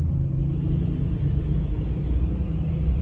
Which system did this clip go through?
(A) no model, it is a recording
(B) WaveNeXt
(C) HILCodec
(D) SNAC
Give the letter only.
A